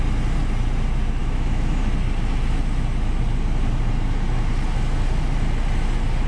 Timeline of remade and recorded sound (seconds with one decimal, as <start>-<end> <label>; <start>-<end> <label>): 0.0-1.2 recorded; 1.2-1.8 remade; 1.8-6.3 recorded